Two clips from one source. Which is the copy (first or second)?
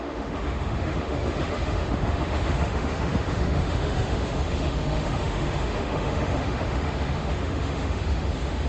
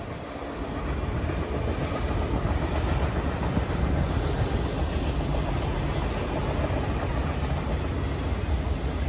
first